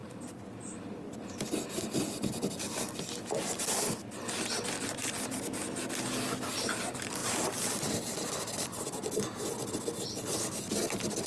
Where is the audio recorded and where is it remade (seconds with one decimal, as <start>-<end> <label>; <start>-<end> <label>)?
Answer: 0.0-7.2 recorded; 7.2-7.9 remade; 7.9-11.3 recorded